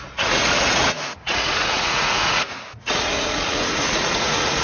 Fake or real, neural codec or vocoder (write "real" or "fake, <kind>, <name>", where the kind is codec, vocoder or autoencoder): fake, vocoder, Vocos